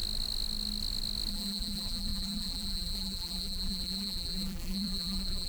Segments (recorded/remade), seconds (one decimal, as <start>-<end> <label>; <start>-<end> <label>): 0.0-1.3 recorded; 1.3-5.5 remade